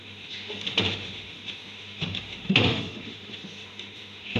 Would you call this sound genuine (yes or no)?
no